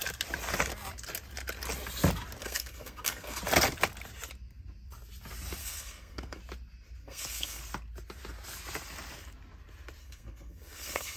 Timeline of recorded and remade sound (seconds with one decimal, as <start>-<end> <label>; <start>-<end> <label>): 0.0-2.4 recorded; 2.4-3.4 remade; 3.4-5.6 recorded; 5.6-6.4 remade; 6.4-7.0 recorded; 7.0-7.6 remade; 7.6-10.0 recorded; 10.0-11.2 remade

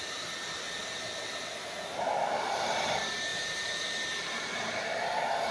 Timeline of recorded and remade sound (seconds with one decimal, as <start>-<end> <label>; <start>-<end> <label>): 0.0-3.3 recorded; 3.3-4.6 remade; 4.6-5.5 recorded